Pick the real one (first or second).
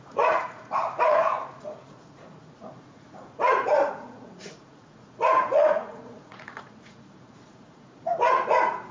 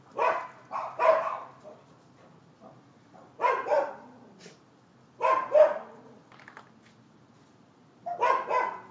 second